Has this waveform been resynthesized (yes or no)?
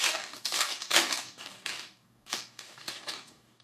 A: yes